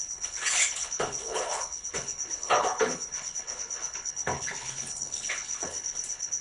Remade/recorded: remade